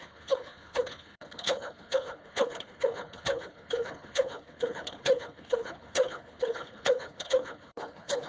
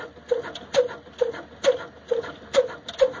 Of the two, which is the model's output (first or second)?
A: first